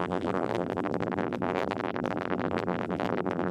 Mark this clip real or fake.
fake